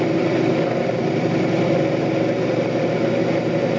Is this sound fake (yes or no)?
no